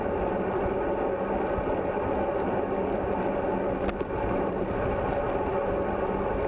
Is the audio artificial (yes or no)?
no